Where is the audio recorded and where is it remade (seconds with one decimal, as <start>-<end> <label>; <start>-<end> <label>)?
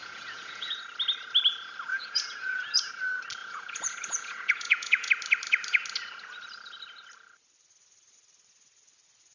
0.0-0.8 remade; 0.8-1.9 recorded; 1.9-2.9 remade; 2.9-3.4 recorded; 3.4-5.1 remade; 5.1-9.3 recorded